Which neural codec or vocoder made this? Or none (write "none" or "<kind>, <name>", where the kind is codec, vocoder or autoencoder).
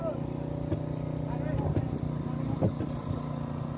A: none